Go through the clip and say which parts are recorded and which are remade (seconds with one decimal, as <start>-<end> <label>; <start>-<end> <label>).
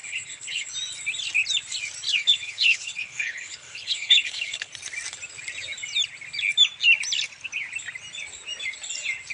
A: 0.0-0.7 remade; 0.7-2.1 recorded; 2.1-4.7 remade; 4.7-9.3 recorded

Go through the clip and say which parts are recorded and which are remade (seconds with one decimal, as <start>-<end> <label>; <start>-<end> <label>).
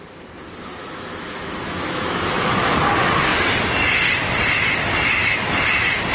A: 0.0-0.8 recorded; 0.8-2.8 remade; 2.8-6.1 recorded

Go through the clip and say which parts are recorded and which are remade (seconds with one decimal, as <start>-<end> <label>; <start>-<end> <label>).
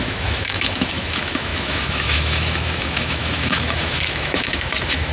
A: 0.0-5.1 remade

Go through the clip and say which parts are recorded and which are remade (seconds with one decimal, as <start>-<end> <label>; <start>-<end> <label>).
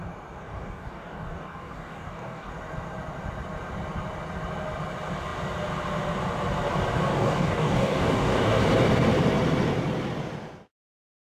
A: 0.0-0.4 recorded; 0.4-2.5 remade; 2.5-7.1 recorded; 7.1-8.6 remade; 8.6-11.3 recorded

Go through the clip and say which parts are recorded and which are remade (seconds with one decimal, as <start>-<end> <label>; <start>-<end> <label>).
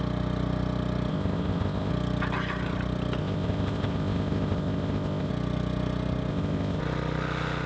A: 0.0-1.1 recorded; 1.1-1.9 remade; 1.9-3.2 recorded; 3.2-5.3 remade; 5.3-6.3 recorded; 6.3-6.8 remade; 6.8-7.7 recorded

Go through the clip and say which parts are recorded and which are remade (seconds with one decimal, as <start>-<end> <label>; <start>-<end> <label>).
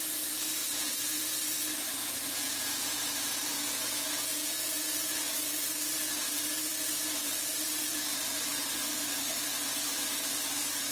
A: 0.0-0.6 recorded; 0.6-1.2 remade; 1.2-2.0 recorded; 2.0-5.5 remade; 5.5-10.9 recorded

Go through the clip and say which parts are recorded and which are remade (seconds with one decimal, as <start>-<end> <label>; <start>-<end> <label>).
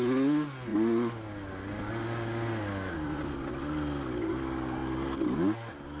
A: 0.0-6.0 recorded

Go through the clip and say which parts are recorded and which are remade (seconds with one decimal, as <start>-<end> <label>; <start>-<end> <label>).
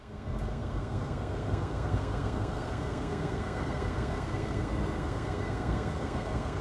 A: 0.0-6.6 remade